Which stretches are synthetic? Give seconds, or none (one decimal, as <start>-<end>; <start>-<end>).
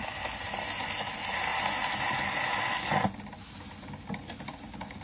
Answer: none